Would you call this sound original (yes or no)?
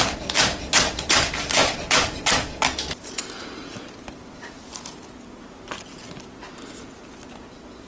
yes